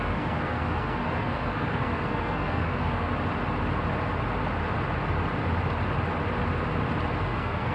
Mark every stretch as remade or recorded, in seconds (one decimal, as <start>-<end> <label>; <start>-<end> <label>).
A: 0.0-3.1 remade; 3.1-7.2 recorded; 7.2-7.7 remade